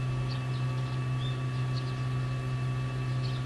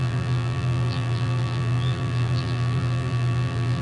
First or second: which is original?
first